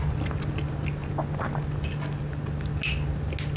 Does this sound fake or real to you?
real